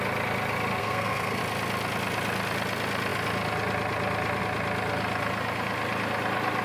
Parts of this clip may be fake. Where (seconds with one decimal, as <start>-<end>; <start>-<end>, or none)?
0.8-1.4